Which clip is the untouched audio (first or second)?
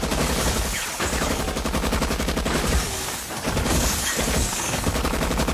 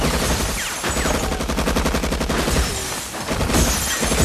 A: second